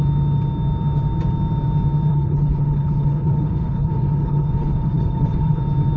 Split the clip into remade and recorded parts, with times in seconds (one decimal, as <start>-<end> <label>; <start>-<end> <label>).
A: 0.0-2.1 recorded; 2.1-5.6 remade; 5.6-6.0 recorded